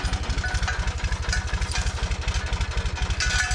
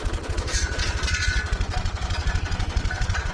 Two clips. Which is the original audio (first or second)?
first